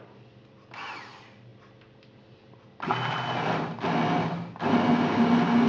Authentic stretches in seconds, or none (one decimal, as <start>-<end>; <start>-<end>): 0.0-5.7